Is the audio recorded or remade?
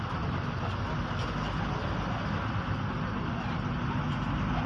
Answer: recorded